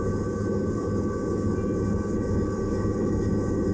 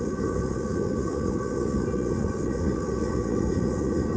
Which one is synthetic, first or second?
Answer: second